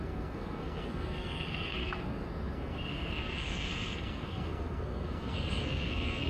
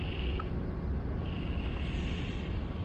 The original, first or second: second